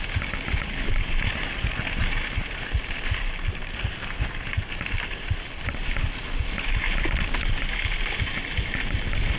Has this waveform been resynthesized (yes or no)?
no